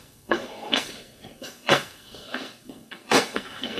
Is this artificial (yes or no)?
yes